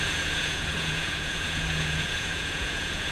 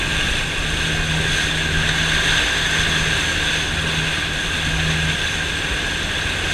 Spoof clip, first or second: first